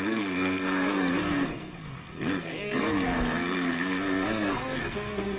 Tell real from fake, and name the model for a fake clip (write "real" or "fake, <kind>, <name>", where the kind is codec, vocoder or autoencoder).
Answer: fake, codec, SNAC